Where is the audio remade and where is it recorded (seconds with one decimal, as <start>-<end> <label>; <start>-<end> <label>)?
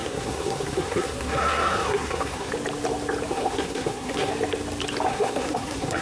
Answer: 0.0-2.5 remade; 2.5-3.3 recorded; 3.3-4.3 remade; 4.3-5.1 recorded; 5.1-6.0 remade